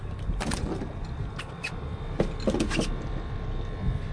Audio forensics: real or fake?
real